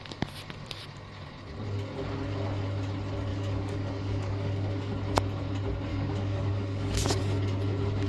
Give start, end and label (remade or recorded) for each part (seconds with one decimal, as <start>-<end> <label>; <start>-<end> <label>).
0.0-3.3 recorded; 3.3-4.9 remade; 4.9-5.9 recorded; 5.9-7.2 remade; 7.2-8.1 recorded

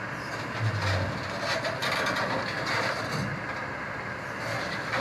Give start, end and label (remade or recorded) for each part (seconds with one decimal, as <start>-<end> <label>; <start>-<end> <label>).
0.0-5.0 recorded

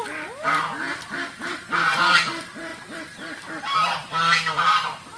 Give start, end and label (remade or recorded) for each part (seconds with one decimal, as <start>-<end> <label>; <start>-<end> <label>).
0.0-0.9 recorded; 0.9-1.9 remade; 1.9-2.7 recorded; 2.7-3.5 remade; 3.5-5.2 recorded

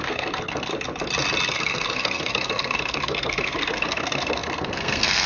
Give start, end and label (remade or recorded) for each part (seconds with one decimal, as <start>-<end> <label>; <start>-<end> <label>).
0.0-0.7 remade; 0.7-1.5 recorded; 1.5-5.3 remade